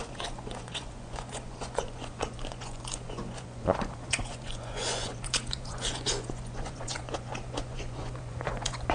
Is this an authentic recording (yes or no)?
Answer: no